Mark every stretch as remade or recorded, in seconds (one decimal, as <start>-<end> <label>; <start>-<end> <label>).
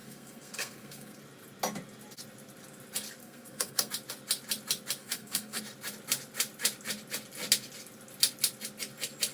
0.0-1.2 remade; 1.2-3.2 recorded; 3.2-3.9 remade; 3.9-5.0 recorded; 5.0-5.6 remade; 5.6-9.3 recorded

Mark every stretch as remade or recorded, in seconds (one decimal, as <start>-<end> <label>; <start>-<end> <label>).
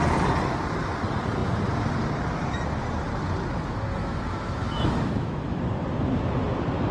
0.0-4.0 recorded; 4.0-5.6 remade; 5.6-6.9 recorded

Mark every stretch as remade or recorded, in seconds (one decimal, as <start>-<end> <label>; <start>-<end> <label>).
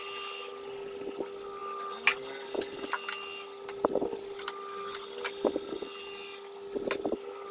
0.0-7.5 recorded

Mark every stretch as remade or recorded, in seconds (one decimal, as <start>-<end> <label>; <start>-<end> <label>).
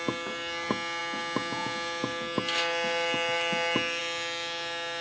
0.0-5.0 recorded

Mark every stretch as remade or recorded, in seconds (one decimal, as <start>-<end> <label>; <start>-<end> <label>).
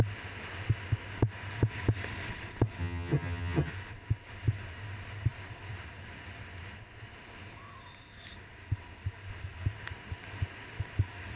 0.0-2.8 recorded; 2.8-3.7 remade; 3.7-11.4 recorded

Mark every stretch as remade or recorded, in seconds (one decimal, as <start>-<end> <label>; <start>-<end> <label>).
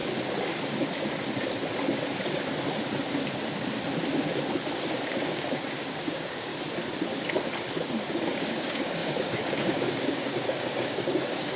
0.0-4.8 recorded; 4.8-6.5 remade; 6.5-8.3 recorded; 8.3-11.6 remade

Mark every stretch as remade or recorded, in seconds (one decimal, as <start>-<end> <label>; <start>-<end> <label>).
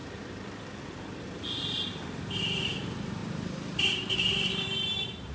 0.0-3.2 recorded; 3.2-5.3 remade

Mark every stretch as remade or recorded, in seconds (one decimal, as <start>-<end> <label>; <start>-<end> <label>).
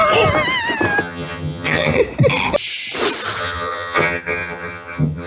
0.0-1.0 recorded; 1.0-2.0 remade; 2.0-3.4 recorded; 3.4-5.3 remade